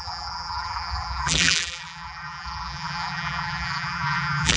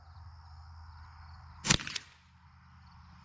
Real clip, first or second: second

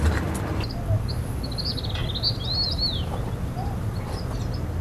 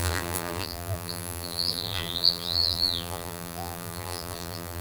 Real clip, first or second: first